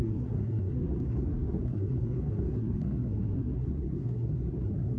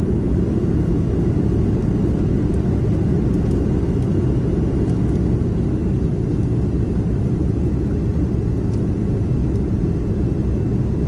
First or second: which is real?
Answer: second